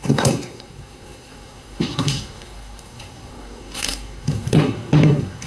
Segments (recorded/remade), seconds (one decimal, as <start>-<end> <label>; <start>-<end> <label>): 0.0-5.5 remade